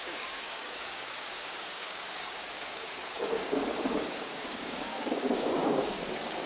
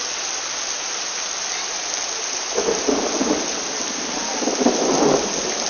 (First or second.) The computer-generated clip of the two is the first